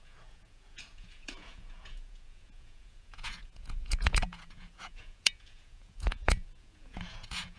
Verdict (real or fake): fake